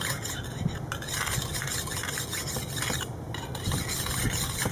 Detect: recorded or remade recorded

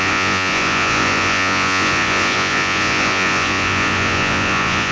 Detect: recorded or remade remade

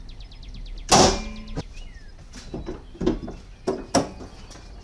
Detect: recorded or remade recorded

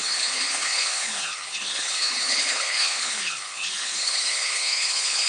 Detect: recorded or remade remade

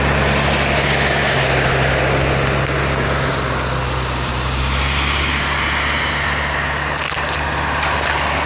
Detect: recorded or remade recorded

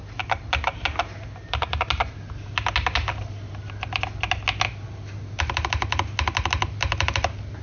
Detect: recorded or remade recorded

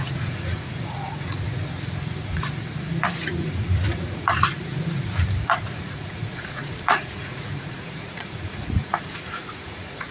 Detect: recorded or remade remade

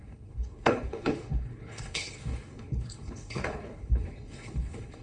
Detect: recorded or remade remade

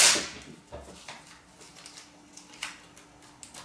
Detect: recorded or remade recorded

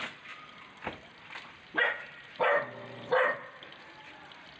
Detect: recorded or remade recorded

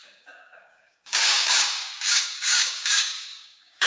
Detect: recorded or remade remade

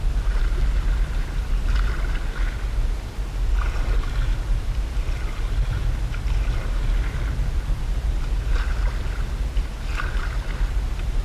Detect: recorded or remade recorded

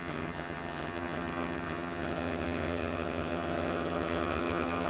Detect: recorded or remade remade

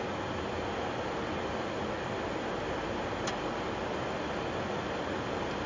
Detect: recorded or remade recorded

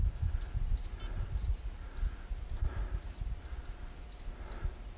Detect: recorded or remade recorded